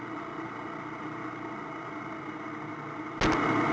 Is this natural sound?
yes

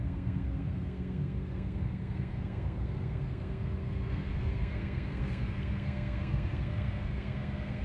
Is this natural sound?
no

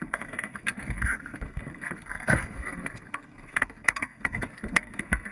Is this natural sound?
no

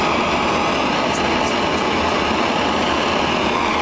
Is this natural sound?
yes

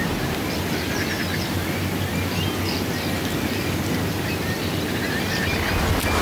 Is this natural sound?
yes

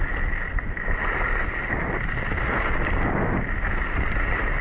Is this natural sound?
yes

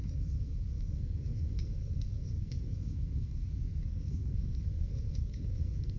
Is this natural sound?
no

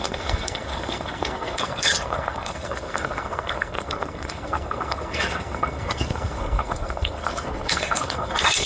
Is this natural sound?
no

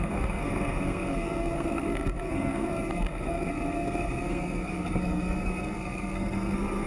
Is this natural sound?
no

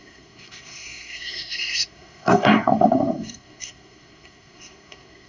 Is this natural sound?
no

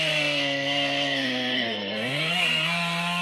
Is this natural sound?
no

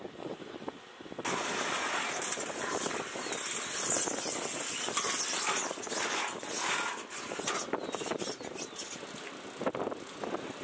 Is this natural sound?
yes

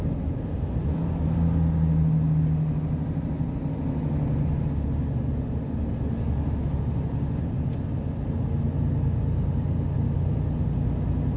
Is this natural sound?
yes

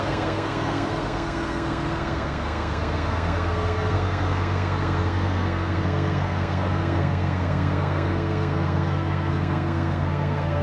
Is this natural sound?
no